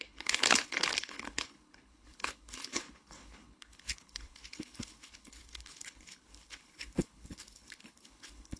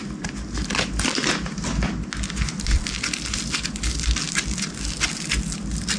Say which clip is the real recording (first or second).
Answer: second